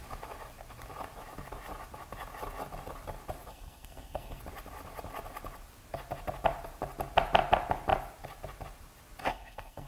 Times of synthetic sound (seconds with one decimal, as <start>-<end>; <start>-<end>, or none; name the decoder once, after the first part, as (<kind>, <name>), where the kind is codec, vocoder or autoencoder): 3.5-4.4 (codec, SNAC); 9.3-9.9